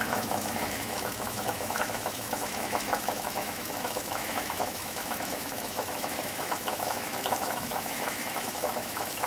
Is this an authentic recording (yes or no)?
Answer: no